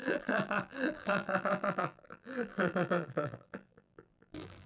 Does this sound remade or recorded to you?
remade